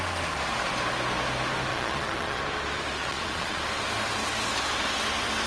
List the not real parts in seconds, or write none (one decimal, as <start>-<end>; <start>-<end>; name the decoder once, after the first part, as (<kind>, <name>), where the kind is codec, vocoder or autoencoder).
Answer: 1.7-2.4 (vocoder, Vocos); 3.0-3.6